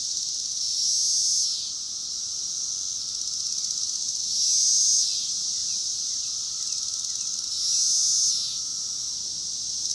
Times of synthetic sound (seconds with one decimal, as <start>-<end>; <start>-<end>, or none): 5.6-6.6